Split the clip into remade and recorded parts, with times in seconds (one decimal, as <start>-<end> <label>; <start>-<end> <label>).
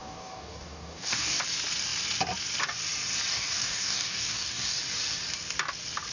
0.0-1.4 remade; 1.4-3.3 recorded; 3.3-4.8 remade; 4.8-6.1 recorded